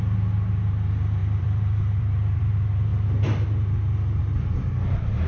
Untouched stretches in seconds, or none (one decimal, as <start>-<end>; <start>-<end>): 0.0-1.2; 2.4-5.3